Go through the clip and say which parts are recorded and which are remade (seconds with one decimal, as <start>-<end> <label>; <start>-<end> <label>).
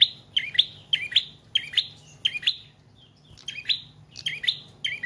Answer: 0.0-5.1 recorded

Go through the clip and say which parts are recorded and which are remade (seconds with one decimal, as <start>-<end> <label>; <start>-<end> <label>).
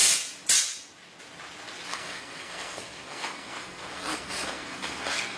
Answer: 0.0-1.9 recorded; 1.9-5.4 remade